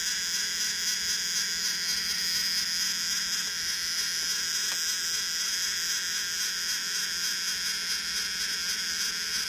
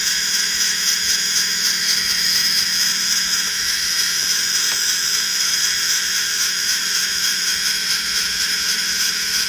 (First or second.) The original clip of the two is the first